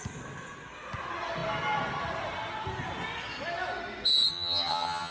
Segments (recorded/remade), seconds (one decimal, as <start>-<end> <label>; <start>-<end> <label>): 0.0-4.3 recorded; 4.3-5.1 remade